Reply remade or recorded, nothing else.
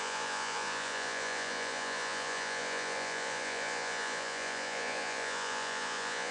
remade